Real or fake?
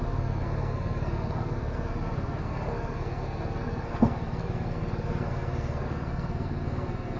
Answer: fake